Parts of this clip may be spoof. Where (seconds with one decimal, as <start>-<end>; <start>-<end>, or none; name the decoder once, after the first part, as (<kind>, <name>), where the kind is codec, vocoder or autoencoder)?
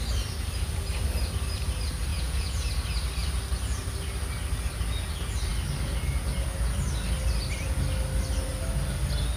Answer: 2.1-2.7 (vocoder, Vocos)